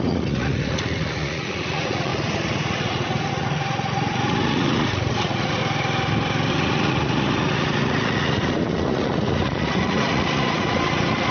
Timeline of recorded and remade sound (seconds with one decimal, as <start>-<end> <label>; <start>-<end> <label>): 0.0-5.6 remade; 5.6-6.5 recorded; 6.5-11.3 remade